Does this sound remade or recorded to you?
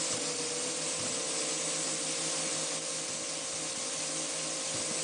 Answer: recorded